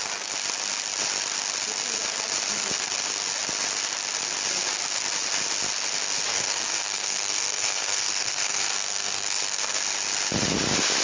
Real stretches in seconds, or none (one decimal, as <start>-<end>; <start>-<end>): 0.0-6.3; 9.8-11.0